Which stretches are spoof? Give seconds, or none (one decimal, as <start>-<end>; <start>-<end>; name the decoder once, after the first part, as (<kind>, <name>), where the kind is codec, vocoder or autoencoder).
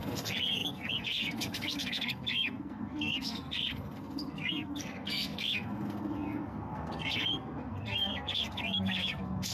0.0-9.5 (codec, SNAC)